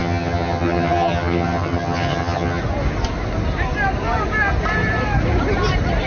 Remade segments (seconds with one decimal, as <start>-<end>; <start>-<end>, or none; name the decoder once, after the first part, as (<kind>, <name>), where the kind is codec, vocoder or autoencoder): 0.0-2.6 (vocoder, HiFi-GAN)